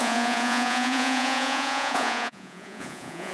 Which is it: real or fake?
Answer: fake